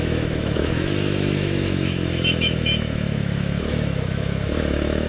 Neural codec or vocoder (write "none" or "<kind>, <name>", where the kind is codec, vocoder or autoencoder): autoencoder, DAC-VAE